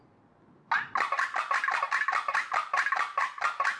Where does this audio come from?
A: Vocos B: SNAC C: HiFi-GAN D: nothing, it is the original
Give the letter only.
D